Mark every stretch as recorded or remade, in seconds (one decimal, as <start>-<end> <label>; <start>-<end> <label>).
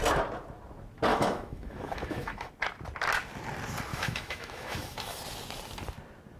0.0-1.1 recorded; 1.1-2.5 remade; 2.5-3.9 recorded; 3.9-5.2 remade; 5.2-6.4 recorded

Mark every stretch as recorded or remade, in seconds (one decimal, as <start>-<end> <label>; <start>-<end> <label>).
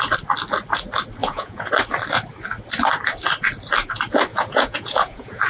0.0-1.2 recorded; 1.2-1.7 remade; 1.7-4.3 recorded; 4.3-5.5 remade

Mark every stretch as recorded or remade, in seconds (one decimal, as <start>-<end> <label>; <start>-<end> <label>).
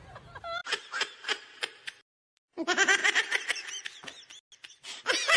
0.0-0.6 recorded; 0.6-1.8 remade; 1.8-3.0 recorded; 3.0-3.8 remade; 3.8-5.4 recorded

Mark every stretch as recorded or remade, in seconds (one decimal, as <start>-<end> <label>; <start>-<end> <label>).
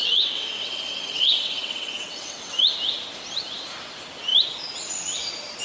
0.0-2.6 remade; 2.6-5.6 recorded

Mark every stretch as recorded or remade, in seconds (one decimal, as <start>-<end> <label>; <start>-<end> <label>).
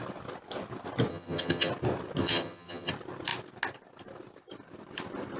0.0-1.1 recorded; 1.1-1.7 remade; 1.7-2.2 recorded; 2.2-2.9 remade; 2.9-5.4 recorded